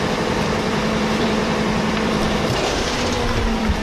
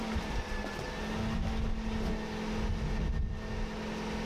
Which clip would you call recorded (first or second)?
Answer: second